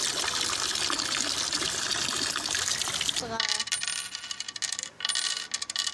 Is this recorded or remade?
recorded